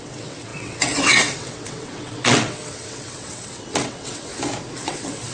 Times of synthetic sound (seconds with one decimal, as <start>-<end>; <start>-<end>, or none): 0.0-4.3; 4.8-5.3